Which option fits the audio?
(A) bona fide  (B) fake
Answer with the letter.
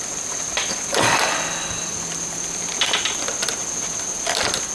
A